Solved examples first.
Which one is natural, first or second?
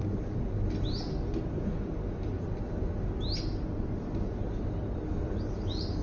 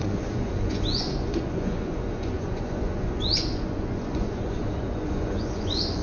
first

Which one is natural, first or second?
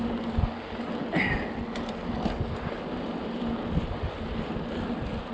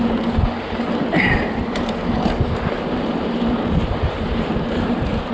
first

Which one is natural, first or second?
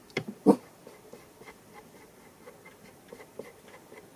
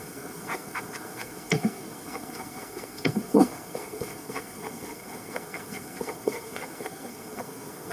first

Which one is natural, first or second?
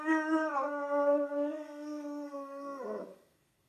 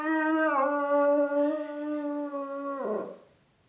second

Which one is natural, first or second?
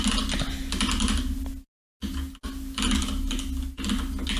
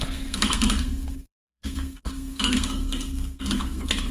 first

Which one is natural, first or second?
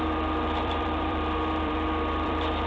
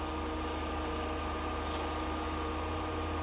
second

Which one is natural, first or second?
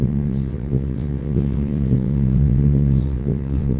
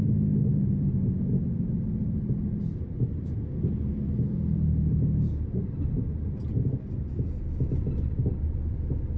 second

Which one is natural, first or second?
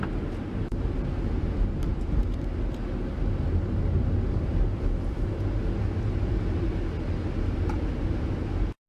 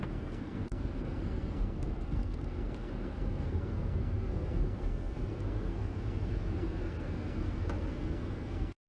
first